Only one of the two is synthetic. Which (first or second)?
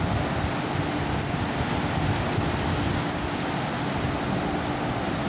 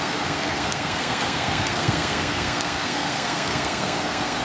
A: second